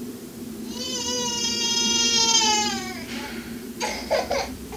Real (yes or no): no